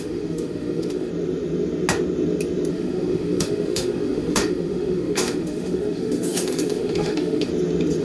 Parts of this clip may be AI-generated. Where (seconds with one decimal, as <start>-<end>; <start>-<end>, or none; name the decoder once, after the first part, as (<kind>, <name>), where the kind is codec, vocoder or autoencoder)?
0.0-1.1 (autoencoder, DAC-VAE); 2.7-7.5

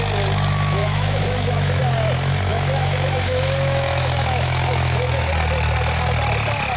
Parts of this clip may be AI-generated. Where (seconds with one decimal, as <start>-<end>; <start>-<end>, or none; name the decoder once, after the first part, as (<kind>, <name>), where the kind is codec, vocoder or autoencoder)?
0.8-1.8 (autoencoder, DAC-VAE); 2.5-5.3

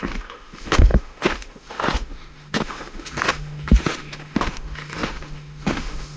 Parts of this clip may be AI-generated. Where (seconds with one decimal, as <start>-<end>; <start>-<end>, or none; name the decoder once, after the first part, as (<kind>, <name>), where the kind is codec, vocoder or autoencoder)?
0.0-6.2 (autoencoder, DAC-VAE)

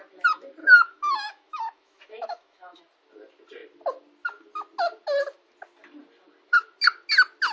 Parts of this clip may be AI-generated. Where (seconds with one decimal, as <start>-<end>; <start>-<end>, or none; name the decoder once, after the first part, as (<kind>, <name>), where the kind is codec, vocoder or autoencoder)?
0.6-2.8 (autoencoder, DAC-VAE)

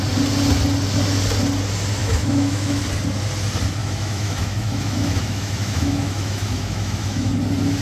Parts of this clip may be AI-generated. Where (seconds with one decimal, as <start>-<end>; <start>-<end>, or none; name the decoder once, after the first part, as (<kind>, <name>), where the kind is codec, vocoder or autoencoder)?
2.0-2.8 (autoencoder, DAC-VAE); 3.8-7.3

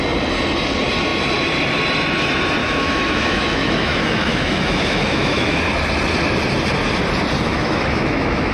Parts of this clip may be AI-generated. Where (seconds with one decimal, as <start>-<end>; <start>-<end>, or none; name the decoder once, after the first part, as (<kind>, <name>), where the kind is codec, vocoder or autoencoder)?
2.6-5.6 (autoencoder, DAC-VAE); 7.5-8.5